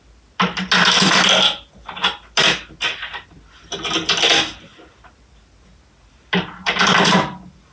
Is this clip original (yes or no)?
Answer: yes